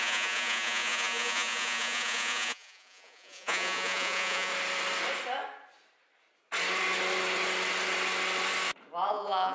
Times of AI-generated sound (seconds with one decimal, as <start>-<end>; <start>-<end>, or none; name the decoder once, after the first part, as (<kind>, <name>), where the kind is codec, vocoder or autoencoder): 0.0-4.5 (vocoder, Vocos); 9.1-9.5